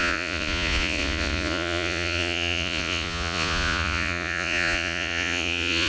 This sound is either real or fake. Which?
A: fake